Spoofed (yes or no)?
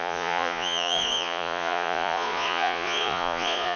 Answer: yes